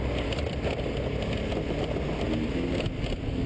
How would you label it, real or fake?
real